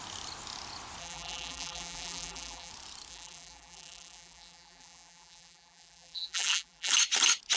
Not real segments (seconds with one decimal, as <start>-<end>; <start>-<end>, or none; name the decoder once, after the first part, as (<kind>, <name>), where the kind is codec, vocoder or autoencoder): 1.0-2.7 (vocoder, BigVGAN v2); 3.1-6.9